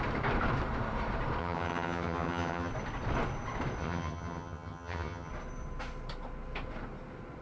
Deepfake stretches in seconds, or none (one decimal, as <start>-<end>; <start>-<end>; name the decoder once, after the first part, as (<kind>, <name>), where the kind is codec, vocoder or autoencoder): 1.4-2.7 (vocoder, HiFi-GAN); 3.8-5.3